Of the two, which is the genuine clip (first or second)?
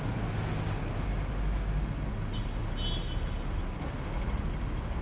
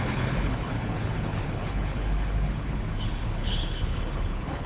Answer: first